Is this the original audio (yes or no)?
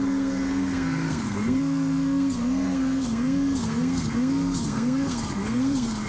no